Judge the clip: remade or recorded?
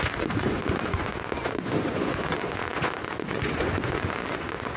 remade